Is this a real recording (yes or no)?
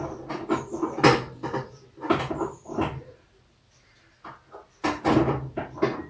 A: yes